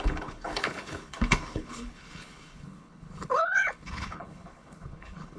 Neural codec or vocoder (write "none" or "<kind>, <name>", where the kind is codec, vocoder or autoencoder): codec, HILCodec